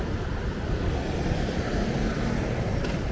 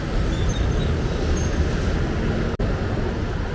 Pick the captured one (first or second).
second